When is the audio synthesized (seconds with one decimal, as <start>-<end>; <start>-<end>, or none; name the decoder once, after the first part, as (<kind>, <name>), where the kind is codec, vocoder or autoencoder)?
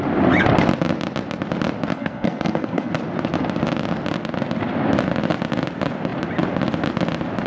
1.9-2.9 (codec, SNAC)